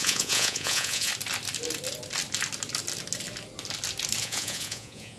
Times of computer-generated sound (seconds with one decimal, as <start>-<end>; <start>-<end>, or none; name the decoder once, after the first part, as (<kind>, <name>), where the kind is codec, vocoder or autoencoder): 0.0-1.1 (vocoder, Vocos); 4.2-5.2